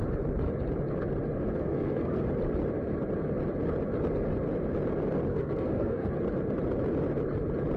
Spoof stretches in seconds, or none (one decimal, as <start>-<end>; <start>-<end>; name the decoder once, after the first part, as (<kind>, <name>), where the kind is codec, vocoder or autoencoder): 1.6-2.2 (codec, SNAC); 5.3-6.1

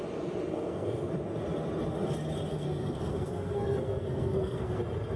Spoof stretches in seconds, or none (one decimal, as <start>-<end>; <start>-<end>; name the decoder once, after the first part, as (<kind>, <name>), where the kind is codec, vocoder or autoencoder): 0.5-1.1 (codec, SNAC); 2.5-4.8

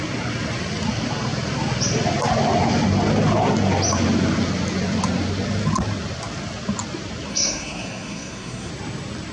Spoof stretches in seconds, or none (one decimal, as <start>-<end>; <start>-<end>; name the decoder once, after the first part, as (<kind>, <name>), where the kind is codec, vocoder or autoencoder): 7.3-8.7 (codec, SNAC)

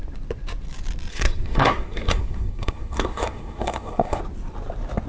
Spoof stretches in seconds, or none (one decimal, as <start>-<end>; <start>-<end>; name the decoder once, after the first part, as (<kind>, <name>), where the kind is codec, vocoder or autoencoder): 1.1-4.2 (codec, SNAC)